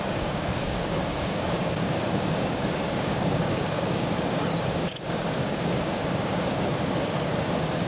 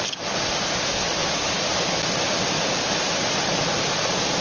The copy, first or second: first